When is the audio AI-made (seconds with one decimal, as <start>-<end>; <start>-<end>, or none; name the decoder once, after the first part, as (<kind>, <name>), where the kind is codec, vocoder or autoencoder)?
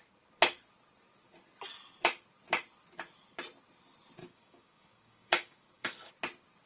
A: 4.2-6.1 (codec, DAC)